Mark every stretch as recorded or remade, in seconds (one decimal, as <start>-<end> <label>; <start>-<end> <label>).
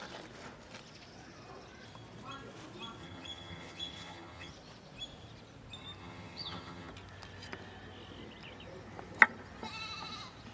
0.0-3.0 recorded; 3.0-4.5 remade; 4.5-6.0 recorded; 6.0-6.9 remade; 6.9-10.5 recorded